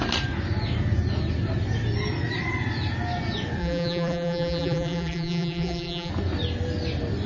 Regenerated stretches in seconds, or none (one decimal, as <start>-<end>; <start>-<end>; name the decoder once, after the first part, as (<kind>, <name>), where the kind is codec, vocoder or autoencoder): 3.6-6.1 (vocoder, BigVGAN v2)

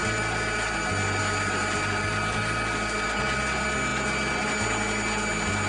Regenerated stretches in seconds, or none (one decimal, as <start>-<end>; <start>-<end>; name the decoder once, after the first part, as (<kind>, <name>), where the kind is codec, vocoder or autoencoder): none

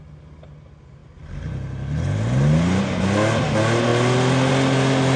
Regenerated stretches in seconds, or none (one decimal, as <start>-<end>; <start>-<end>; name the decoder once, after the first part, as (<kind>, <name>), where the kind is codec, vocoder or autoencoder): none

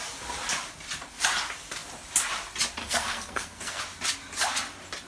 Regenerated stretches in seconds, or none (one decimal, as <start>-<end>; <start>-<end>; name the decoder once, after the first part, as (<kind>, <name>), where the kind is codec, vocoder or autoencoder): 2.8-3.8 (codec, SNAC)

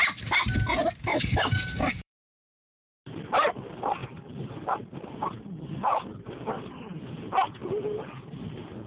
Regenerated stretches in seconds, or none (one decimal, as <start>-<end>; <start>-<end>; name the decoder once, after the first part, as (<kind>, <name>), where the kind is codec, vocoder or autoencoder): 1.1-2.5 (codec, DAC)

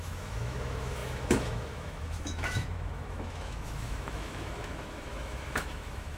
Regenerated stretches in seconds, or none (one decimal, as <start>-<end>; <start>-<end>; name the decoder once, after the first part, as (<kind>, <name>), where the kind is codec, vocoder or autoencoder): 0.0-6.2 (autoencoder, DAC-VAE)

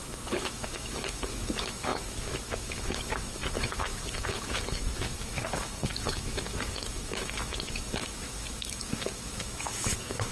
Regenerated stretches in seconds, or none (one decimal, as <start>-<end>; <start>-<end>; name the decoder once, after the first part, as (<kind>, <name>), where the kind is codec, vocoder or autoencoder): 0.0-10.3 (autoencoder, DAC-VAE)

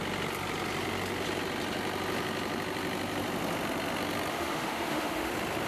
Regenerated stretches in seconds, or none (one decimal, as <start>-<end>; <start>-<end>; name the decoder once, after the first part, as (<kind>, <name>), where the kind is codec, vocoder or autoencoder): 4.3-5.3 (autoencoder, DAC-VAE)